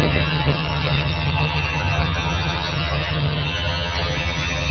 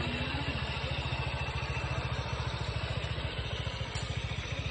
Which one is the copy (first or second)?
first